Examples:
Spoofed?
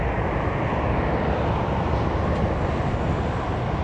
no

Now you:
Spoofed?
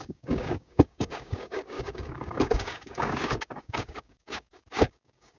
yes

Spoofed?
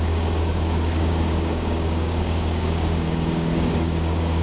yes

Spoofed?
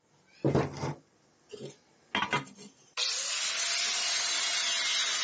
no